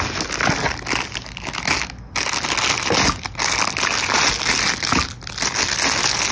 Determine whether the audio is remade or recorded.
recorded